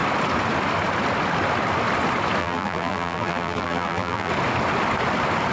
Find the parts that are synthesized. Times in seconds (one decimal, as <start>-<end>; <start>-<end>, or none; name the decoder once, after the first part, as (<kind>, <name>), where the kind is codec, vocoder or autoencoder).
2.4-4.3 (vocoder, BigVGAN v2)